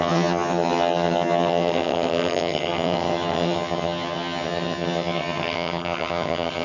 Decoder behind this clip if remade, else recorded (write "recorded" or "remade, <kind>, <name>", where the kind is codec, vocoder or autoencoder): remade, vocoder, HiFi-GAN